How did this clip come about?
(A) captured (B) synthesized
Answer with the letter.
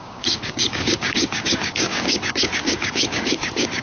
B